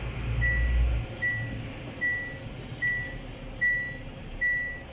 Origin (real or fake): real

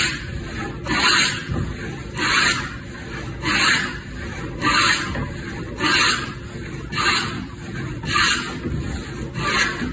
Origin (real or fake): real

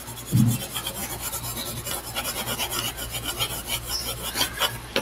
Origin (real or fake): real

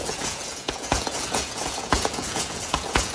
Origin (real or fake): fake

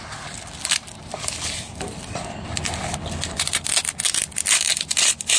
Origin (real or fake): real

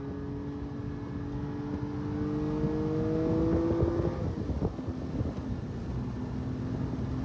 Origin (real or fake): real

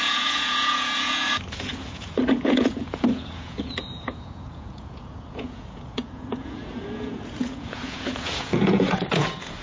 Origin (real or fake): fake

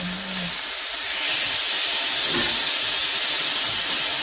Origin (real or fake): real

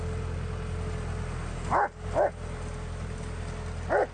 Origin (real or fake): real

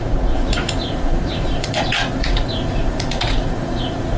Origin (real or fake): fake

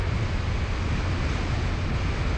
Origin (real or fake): real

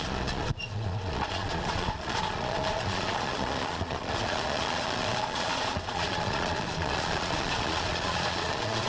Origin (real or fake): fake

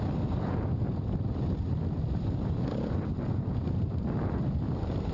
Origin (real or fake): real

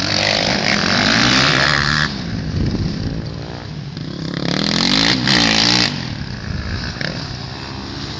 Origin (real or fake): real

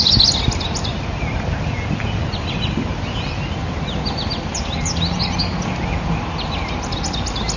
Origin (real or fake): real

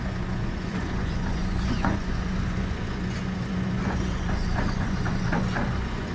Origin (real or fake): fake